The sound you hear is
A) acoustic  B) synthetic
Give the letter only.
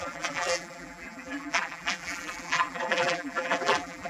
B